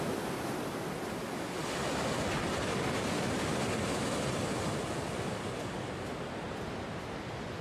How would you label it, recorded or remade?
recorded